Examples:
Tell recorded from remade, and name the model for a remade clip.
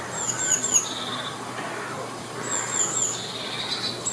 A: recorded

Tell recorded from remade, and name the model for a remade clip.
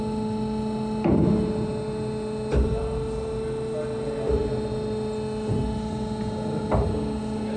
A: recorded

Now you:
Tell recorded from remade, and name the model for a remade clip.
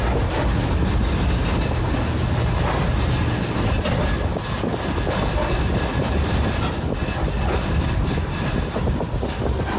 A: recorded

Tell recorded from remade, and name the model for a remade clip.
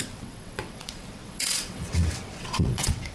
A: remade, vocoder, WaveNeXt